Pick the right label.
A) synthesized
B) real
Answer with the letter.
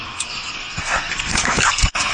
A